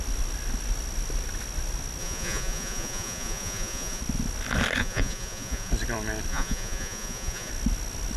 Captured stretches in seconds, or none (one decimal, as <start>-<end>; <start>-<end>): 0.0-2.0; 4.0-4.8; 5.7-6.3; 7.5-8.2

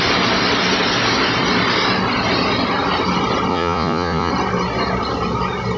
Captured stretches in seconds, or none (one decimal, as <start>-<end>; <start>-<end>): 0.0-3.5; 4.3-5.8

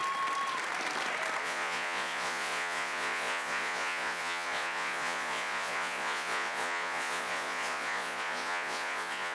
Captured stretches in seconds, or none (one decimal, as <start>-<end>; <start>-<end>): 0.0-1.4

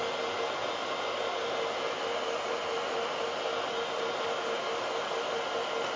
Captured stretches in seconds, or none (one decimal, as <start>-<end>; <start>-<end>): 0.0-6.0

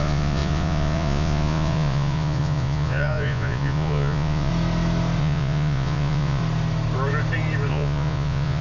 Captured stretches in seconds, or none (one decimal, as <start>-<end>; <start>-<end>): 4.5-5.2; 6.4-7.7

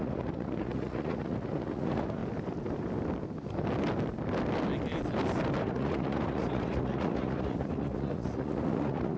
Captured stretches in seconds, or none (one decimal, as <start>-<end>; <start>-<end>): 2.2-5.6

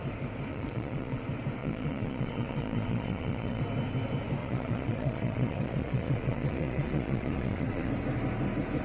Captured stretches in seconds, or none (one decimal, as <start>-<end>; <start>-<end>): 0.0-0.5; 1.2-1.6; 3.6-4.4; 7.9-8.8